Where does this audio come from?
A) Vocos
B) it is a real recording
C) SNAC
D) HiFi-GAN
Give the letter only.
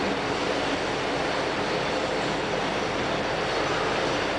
B